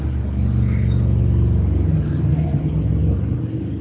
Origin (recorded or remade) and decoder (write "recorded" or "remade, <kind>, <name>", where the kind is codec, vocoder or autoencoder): recorded